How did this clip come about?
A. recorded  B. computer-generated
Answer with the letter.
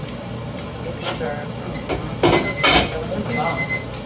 A